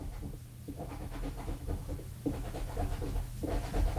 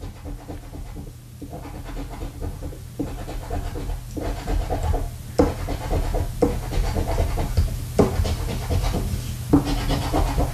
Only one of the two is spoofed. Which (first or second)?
first